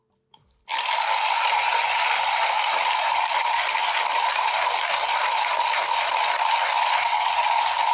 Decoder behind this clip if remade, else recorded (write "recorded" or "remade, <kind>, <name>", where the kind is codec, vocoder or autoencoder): remade, vocoder, BigVGAN v2